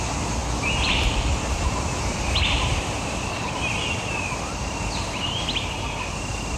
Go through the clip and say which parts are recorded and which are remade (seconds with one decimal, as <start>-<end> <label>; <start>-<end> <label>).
0.0-0.4 recorded; 0.4-3.9 remade; 3.9-6.6 recorded